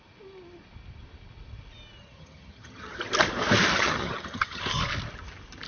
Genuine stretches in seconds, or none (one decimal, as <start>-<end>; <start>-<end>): 0.0-2.0; 3.0-3.7; 4.6-5.7